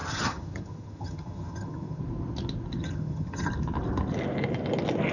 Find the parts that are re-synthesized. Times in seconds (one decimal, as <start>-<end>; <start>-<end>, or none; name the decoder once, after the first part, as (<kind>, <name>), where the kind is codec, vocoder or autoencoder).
0.0-2.0 (vocoder, HiFi-GAN); 2.8-3.5